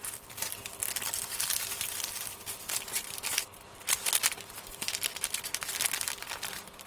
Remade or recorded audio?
recorded